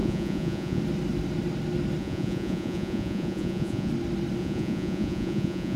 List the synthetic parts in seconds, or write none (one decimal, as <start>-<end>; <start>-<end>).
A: 0.0-0.8; 2.0-3.9; 4.4-5.8